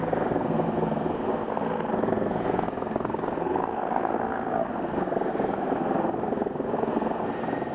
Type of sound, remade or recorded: remade